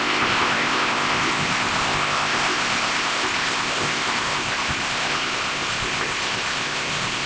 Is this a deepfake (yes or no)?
yes